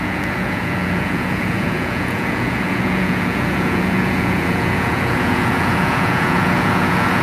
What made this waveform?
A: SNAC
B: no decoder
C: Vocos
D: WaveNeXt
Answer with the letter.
C